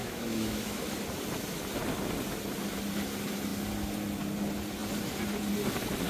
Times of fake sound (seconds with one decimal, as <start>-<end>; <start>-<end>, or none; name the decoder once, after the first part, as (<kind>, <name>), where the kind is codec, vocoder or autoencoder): 0.0-0.8 (autoencoder, DAC-VAE)